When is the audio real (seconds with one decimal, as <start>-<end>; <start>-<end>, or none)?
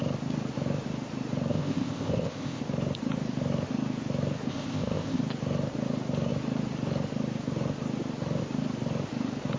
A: 0.0-1.5; 2.6-4.5; 5.2-9.6